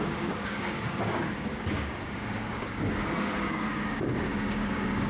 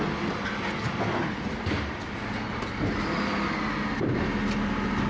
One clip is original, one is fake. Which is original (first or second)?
second